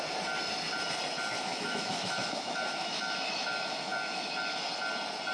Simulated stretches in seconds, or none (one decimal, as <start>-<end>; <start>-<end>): 1.5-4.7